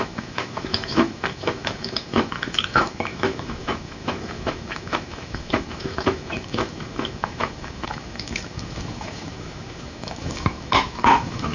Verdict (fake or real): fake